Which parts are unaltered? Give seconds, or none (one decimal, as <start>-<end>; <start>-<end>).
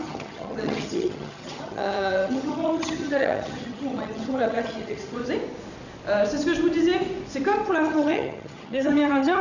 5.2-7.7